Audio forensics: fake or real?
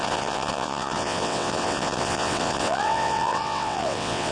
fake